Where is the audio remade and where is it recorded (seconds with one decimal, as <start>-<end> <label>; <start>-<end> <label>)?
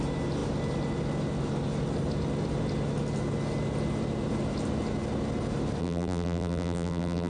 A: 0.0-5.8 recorded; 5.8-7.3 remade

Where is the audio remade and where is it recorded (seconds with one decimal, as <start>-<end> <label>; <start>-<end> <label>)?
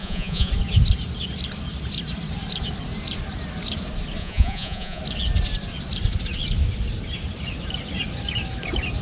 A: 0.0-0.5 remade; 0.5-4.2 recorded; 4.2-5.0 remade; 5.0-9.0 recorded